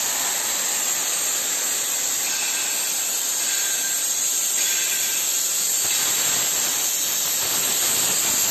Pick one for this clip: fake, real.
real